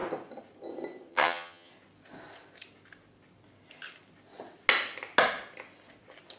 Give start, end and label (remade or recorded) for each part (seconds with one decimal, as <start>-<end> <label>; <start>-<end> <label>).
0.0-1.1 recorded; 1.1-1.7 remade; 1.7-6.4 recorded